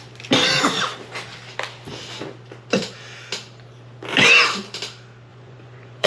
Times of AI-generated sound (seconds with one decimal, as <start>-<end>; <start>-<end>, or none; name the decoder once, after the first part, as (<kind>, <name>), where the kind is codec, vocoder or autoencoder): 5.3-6.1 (vocoder, Vocos)

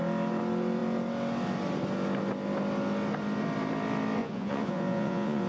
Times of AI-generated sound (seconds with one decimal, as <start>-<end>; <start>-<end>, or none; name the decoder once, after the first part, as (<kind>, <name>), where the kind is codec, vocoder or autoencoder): 4.2-5.5 (vocoder, Vocos)

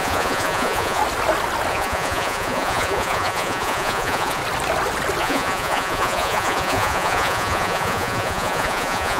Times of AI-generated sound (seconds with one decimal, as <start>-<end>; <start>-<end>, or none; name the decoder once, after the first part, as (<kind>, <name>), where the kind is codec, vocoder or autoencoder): 0.0-1.0 (vocoder, Vocos); 1.7-4.4; 5.2-9.2

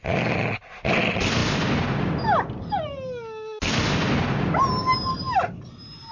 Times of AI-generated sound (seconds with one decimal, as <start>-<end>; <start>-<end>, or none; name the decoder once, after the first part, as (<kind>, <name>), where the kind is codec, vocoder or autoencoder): none

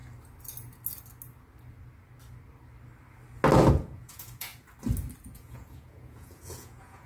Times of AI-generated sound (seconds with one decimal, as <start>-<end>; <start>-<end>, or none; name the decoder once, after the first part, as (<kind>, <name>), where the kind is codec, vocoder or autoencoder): 3.7-4.5 (vocoder, Vocos); 5.3-7.1